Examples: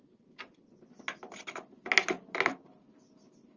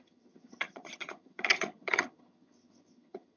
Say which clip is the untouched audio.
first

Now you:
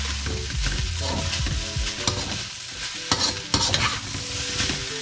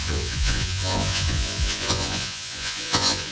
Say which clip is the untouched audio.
first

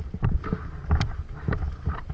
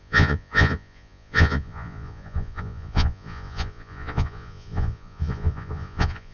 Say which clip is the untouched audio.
first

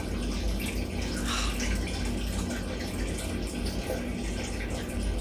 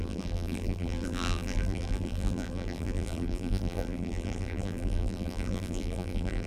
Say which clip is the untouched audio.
first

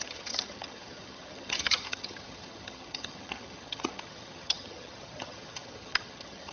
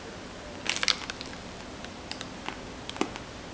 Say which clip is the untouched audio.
second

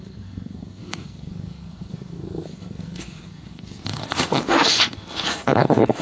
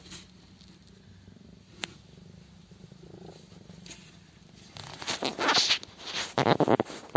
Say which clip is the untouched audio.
second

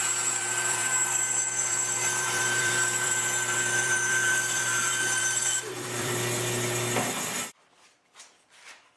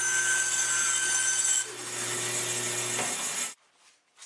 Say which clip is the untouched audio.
second